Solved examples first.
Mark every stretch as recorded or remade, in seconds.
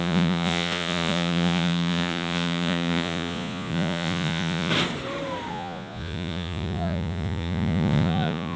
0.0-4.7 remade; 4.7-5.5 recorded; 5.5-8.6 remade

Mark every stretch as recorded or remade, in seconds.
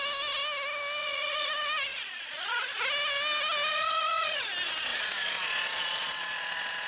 0.0-1.0 recorded; 1.0-1.5 remade; 1.5-1.9 recorded; 1.9-2.8 remade; 2.8-3.7 recorded; 3.7-4.5 remade; 4.5-4.9 recorded; 4.9-6.9 remade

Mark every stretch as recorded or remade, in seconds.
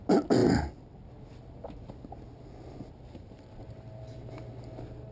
0.0-5.1 recorded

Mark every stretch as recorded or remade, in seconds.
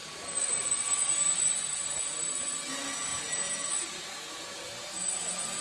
0.0-5.6 remade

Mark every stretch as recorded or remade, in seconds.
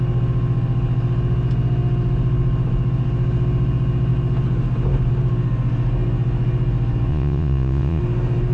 0.0-7.1 recorded; 7.1-8.0 remade; 8.0-8.5 recorded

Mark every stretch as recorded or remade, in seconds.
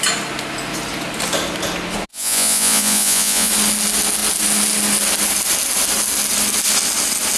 0.0-2.1 recorded; 2.1-3.5 remade; 3.5-7.4 recorded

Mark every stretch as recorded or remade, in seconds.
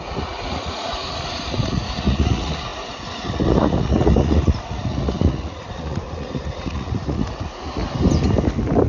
0.0-7.8 remade; 7.8-8.9 recorded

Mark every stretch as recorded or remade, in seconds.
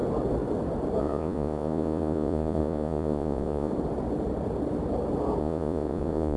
0.0-1.0 recorded; 1.0-3.7 remade; 3.7-5.4 recorded; 5.4-6.4 remade